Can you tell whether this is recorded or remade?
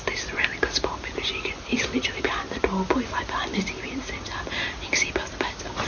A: recorded